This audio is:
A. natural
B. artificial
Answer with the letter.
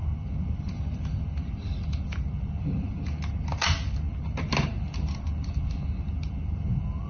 A